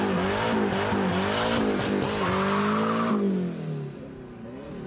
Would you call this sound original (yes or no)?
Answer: yes